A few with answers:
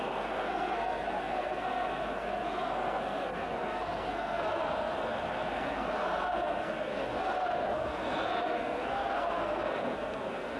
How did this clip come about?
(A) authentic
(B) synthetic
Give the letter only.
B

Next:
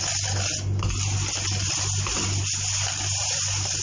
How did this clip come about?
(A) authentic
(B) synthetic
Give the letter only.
A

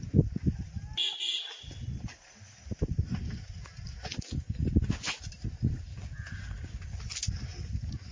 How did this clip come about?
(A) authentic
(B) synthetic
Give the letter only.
A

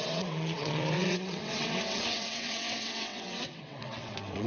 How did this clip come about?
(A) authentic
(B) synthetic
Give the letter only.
B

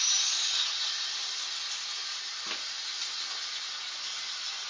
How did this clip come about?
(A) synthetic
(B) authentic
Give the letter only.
B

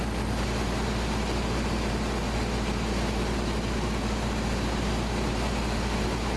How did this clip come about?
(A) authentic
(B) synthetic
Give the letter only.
A